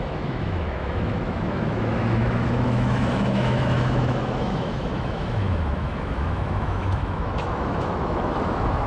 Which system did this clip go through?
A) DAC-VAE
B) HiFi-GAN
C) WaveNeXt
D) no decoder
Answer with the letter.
A